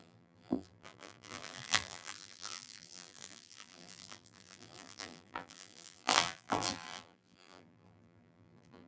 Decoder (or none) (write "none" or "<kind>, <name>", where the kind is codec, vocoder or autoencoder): vocoder, BigVGAN v2